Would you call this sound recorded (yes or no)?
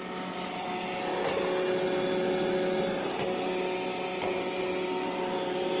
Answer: yes